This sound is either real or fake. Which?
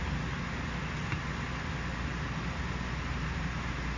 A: real